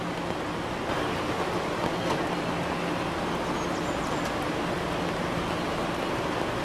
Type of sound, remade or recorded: recorded